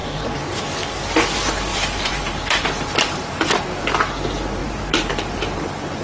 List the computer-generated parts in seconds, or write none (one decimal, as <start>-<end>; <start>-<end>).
0.0-0.6; 1.7-3.8; 4.6-5.6